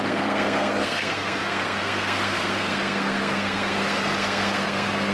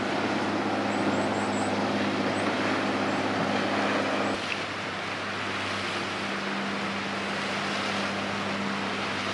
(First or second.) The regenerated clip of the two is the first